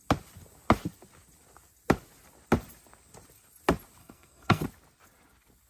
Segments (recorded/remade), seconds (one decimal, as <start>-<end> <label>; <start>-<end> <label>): 0.0-4.0 recorded; 4.0-4.6 remade; 4.6-5.7 recorded